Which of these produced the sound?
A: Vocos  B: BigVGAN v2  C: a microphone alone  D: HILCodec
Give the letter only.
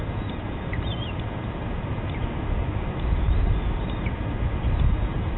C